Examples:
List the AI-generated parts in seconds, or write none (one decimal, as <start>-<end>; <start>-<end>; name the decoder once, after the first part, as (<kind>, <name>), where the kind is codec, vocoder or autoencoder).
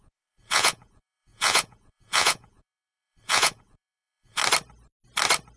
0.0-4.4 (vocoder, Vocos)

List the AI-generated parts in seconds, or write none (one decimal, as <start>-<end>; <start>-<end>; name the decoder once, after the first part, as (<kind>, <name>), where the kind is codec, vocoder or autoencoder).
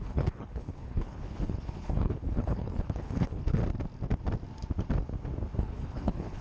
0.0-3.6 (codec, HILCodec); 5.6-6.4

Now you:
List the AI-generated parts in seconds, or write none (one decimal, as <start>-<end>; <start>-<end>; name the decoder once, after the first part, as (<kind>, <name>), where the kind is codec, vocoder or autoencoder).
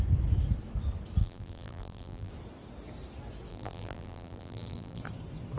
1.2-2.3 (vocoder, BigVGAN v2); 3.5-5.0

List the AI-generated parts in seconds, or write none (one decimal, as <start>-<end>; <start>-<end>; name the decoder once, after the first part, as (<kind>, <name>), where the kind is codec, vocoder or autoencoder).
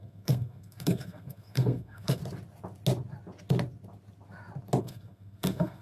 0.0-2.2 (codec, SNAC); 4.8-5.8